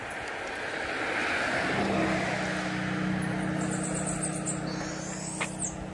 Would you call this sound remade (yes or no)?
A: no